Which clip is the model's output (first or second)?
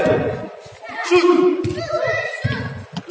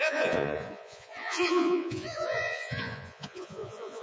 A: second